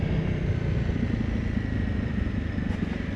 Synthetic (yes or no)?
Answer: no